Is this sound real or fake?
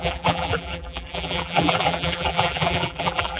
fake